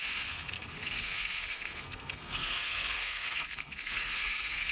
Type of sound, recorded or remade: remade